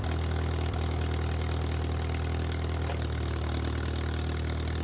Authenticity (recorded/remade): recorded